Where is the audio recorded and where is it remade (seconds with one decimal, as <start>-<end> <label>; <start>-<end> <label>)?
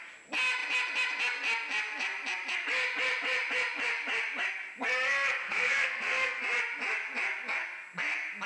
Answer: 0.0-5.4 recorded; 5.4-6.4 remade; 6.4-8.5 recorded